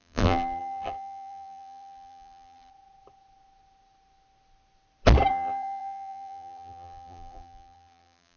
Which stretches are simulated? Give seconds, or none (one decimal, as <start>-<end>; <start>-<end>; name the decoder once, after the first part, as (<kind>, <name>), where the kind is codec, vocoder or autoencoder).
0.0-2.7 (vocoder, BigVGAN v2); 5.3-8.4